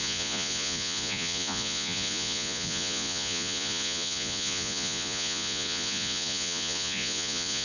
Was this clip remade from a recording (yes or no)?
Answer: yes